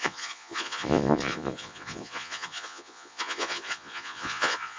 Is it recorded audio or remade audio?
remade